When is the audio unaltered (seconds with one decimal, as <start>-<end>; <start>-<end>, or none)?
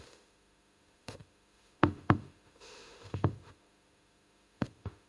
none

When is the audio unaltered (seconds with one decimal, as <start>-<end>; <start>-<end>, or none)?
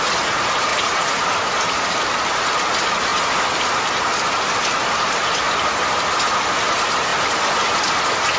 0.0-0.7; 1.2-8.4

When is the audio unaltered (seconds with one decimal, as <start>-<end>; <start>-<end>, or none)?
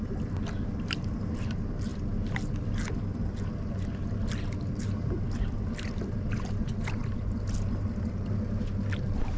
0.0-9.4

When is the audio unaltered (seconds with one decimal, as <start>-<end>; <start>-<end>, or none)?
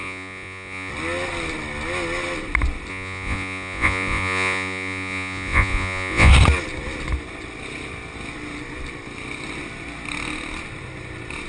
0.9-2.9; 6.3-11.5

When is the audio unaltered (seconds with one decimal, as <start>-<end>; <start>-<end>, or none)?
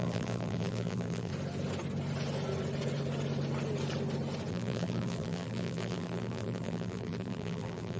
1.3-4.5